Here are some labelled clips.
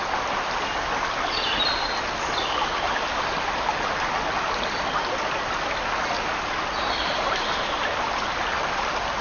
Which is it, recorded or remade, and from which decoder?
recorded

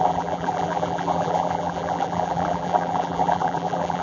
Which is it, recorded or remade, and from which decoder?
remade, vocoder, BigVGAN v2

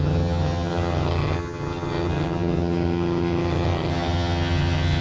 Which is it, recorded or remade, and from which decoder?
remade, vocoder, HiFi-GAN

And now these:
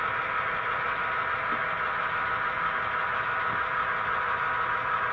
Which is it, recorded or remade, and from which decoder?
recorded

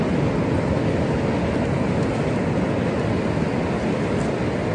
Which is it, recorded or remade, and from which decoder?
recorded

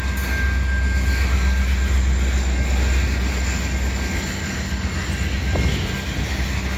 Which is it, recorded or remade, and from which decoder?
recorded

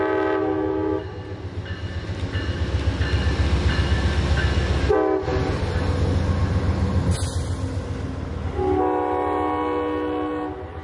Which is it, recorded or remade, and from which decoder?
recorded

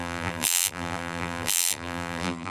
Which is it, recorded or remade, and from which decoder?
remade, vocoder, BigVGAN v2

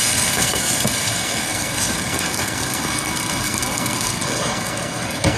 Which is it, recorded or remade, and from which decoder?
remade, codec, SNAC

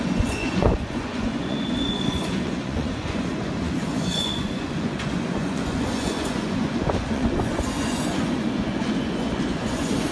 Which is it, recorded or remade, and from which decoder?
remade, vocoder, Vocos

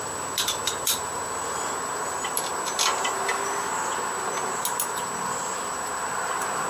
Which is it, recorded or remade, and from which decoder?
recorded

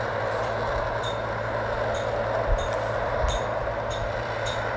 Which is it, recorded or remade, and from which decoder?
remade, vocoder, BigVGAN v2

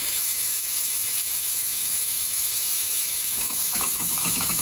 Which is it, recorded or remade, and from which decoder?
remade, autoencoder, DAC-VAE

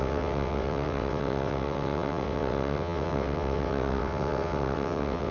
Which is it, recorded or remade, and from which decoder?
remade, vocoder, WaveNeXt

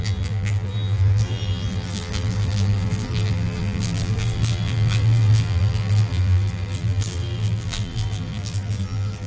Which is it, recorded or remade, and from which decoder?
remade, vocoder, BigVGAN v2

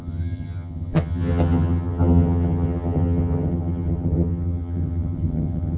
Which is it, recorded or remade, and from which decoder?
remade, vocoder, HiFi-GAN